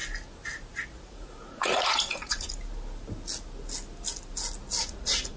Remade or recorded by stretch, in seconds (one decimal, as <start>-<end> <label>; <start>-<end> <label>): 0.0-1.0 recorded; 1.0-2.5 remade; 2.5-4.8 recorded; 4.8-5.4 remade